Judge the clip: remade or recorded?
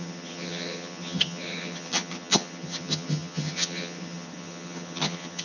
remade